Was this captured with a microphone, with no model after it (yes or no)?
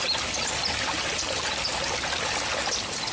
yes